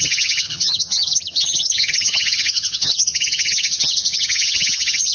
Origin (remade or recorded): remade